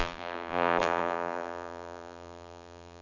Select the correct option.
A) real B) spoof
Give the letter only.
B